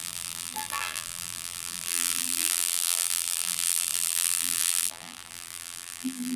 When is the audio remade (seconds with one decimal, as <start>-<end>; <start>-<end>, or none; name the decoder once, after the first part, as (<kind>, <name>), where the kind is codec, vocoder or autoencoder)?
0.0-6.4 (vocoder, BigVGAN v2)